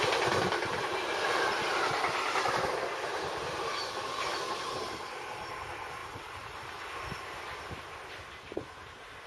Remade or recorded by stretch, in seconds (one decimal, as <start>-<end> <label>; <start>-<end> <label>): 0.0-9.3 recorded